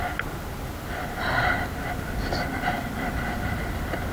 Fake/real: real